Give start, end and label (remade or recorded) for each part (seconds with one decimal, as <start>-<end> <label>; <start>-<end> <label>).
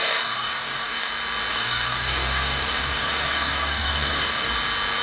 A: 0.0-1.1 remade; 1.1-1.5 recorded; 1.5-4.5 remade; 4.5-5.0 recorded